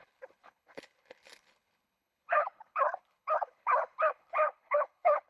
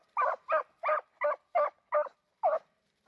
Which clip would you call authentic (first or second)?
second